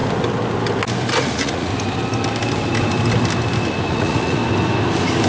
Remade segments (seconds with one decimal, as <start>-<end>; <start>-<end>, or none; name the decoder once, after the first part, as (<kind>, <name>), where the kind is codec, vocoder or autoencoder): 1.2-1.7 (vocoder, Vocos); 3.9-4.4